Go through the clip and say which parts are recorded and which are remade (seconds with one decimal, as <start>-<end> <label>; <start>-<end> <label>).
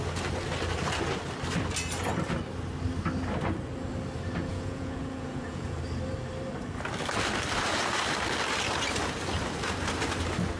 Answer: 0.0-4.5 recorded; 4.5-5.8 remade; 5.8-10.6 recorded